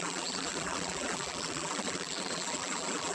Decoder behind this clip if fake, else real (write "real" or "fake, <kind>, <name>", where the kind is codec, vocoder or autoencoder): fake, vocoder, BigVGAN v2